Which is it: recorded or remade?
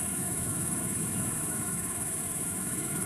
remade